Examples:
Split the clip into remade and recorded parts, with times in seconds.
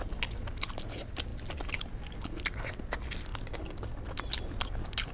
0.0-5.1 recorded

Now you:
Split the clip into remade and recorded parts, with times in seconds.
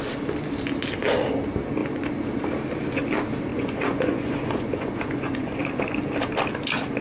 0.0-3.5 recorded; 3.5-5.6 remade; 5.6-7.0 recorded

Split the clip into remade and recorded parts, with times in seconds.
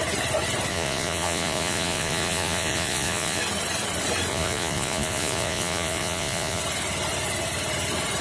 0.0-0.7 recorded; 0.7-3.4 remade; 3.4-4.3 recorded; 4.3-6.6 remade; 6.6-8.2 recorded